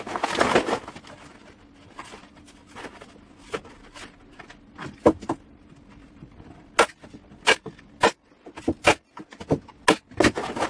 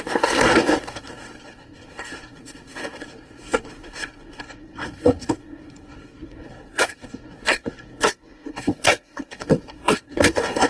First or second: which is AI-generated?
second